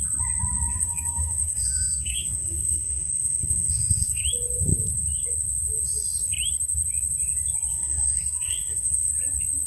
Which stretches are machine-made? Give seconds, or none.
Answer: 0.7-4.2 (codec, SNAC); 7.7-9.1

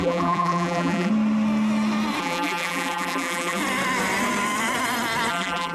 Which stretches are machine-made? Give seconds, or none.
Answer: 0.0-1.1 (vocoder, BigVGAN v2); 2.2-3.6; 5.3-5.7